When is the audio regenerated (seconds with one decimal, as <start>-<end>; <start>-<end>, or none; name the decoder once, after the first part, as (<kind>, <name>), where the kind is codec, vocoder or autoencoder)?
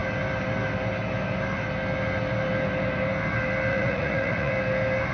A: 3.7-4.5 (vocoder, Vocos)